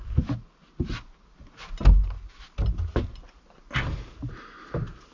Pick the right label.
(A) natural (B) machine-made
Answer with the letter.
A